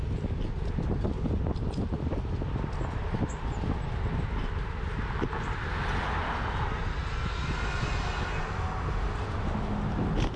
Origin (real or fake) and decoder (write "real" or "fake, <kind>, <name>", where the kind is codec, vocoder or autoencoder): real